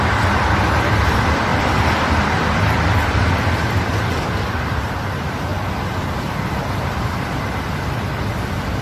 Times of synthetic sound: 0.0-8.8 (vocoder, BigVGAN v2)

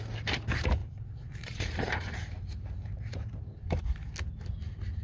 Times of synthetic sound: 0.8-3.8 (vocoder, BigVGAN v2)